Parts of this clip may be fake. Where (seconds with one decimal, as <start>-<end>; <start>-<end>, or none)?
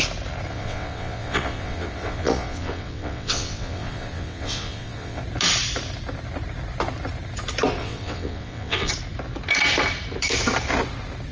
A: 0.5-5.2; 7.8-8.9